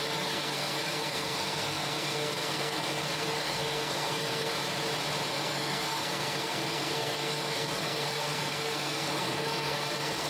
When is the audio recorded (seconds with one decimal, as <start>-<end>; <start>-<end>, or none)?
4.5-5.3